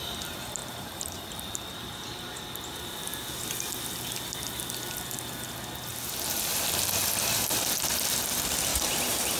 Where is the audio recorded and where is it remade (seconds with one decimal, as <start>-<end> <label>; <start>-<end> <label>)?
0.0-0.6 recorded; 0.6-2.9 remade; 2.9-5.9 recorded; 5.9-6.6 remade; 6.6-8.7 recorded; 8.7-9.4 remade